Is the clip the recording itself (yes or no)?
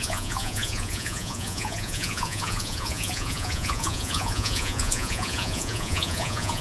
no